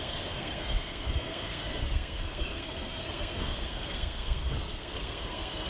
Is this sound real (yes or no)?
no